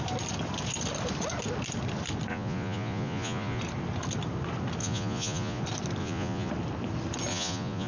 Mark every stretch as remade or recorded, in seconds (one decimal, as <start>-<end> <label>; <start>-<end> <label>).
0.0-2.3 recorded; 2.3-3.6 remade; 3.6-4.8 recorded; 4.8-5.6 remade; 5.6-6.0 recorded; 6.0-6.5 remade; 6.5-7.3 recorded; 7.3-7.9 remade